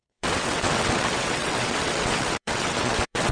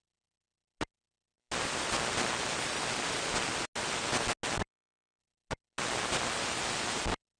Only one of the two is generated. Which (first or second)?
first